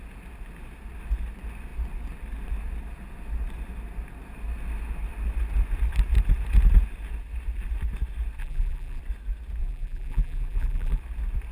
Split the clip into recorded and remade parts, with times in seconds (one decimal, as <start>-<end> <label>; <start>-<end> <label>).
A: 0.0-8.4 recorded; 8.4-9.0 remade; 9.0-9.6 recorded; 9.6-11.0 remade; 11.0-11.5 recorded